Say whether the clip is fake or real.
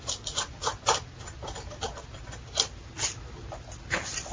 real